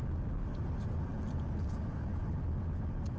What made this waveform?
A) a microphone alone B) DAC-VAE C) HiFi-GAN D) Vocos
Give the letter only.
A